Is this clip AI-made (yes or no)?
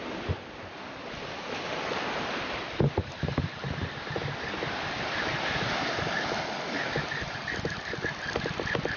no